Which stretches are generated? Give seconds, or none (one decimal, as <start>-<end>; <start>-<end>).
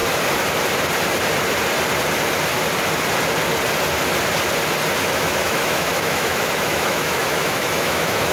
5.0-8.3